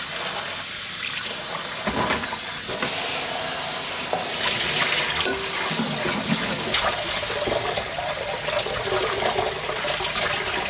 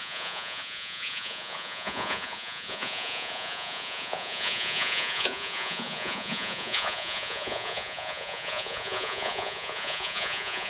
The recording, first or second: first